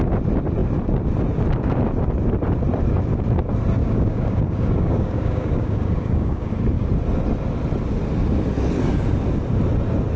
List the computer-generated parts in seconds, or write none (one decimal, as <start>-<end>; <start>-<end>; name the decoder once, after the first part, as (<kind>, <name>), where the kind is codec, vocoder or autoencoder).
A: 3.8-6.5 (codec, DAC)